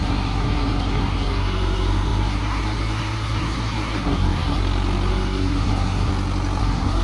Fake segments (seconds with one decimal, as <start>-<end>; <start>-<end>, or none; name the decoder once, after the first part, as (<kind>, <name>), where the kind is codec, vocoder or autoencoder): 0.0-4.6 (codec, SNAC); 5.1-6.1; 6.6-7.0